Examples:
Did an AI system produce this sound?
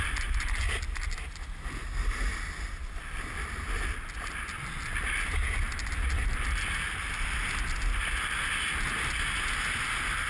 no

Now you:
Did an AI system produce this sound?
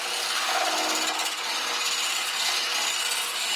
no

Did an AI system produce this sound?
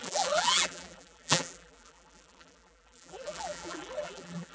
yes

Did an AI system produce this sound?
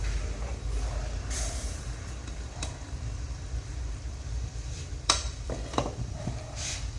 yes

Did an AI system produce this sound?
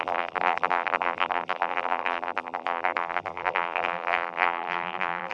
yes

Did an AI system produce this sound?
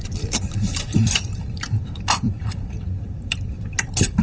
yes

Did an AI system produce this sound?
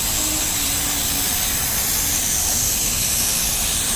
no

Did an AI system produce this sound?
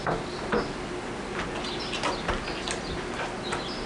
no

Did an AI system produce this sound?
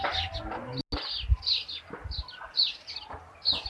no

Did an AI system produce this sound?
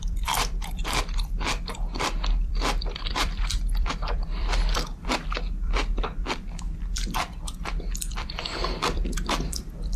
yes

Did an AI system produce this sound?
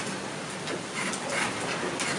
no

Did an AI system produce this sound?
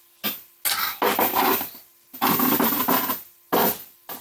no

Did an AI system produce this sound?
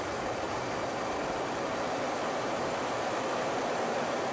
no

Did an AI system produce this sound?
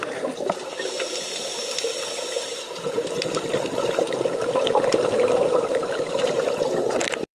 yes